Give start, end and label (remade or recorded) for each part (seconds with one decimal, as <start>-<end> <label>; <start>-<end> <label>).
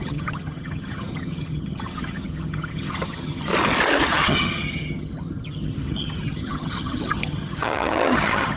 0.0-3.5 remade; 3.5-4.1 recorded; 4.1-8.6 remade